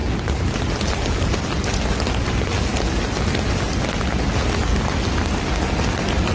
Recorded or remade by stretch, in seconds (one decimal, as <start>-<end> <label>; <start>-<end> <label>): 0.0-6.3 recorded